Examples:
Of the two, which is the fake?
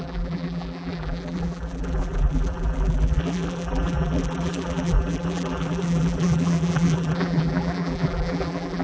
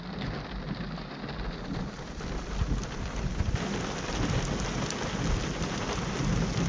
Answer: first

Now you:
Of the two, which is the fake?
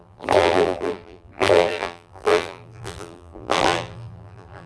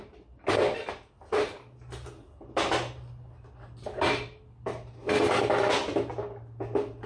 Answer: first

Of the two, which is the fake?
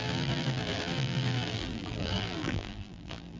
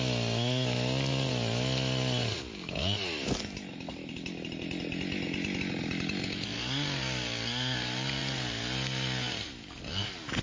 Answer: first